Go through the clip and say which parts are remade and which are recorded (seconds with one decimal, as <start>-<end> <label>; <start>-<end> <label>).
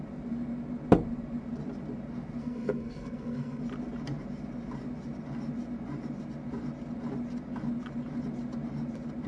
0.0-2.4 recorded; 2.4-3.6 remade; 3.6-9.3 recorded